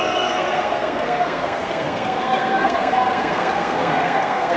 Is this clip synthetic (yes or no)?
yes